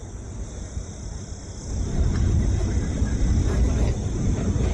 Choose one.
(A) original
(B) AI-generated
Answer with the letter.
A